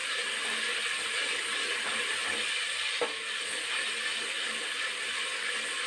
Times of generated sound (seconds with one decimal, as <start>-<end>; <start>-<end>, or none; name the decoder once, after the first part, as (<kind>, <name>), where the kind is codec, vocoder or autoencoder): none